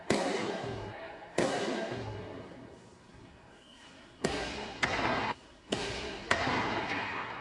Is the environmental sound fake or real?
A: fake